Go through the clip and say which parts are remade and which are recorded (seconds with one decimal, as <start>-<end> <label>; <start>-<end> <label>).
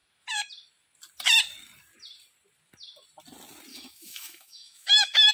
0.0-3.7 recorded; 3.7-5.3 remade